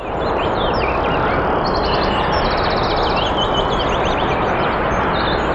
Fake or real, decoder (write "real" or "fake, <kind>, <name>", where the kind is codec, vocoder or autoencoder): real